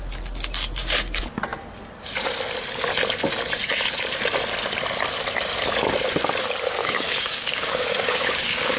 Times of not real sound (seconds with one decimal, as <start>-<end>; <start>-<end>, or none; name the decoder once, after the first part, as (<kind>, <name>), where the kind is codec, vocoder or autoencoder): 6.8-8.8 (codec, DAC)